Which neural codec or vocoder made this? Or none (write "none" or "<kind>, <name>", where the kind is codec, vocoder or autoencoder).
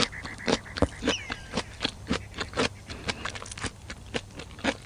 none